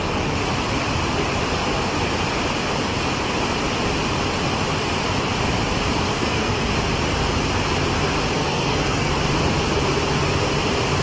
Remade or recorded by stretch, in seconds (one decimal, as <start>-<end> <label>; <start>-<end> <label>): 0.0-6.1 recorded; 6.1-6.7 remade; 6.7-8.4 recorded; 8.4-9.1 remade; 9.1-11.0 recorded